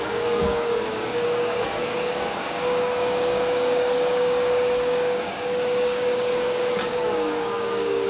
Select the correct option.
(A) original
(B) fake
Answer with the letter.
B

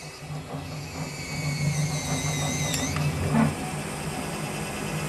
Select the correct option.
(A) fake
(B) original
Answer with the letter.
B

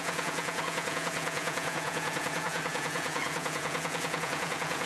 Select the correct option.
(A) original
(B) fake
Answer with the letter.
B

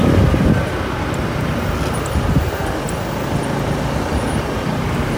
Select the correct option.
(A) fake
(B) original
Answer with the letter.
B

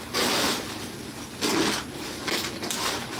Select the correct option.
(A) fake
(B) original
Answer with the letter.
B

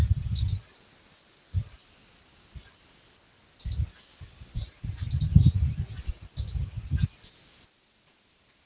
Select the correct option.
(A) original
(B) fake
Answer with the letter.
A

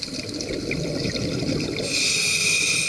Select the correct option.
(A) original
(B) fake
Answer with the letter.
A